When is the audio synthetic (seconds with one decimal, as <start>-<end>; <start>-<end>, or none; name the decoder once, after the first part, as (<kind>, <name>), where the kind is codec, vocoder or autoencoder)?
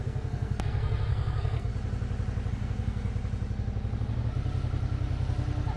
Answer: 0.0-1.7 (codec, SNAC); 2.5-3.1